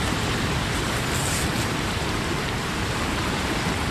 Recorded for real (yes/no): no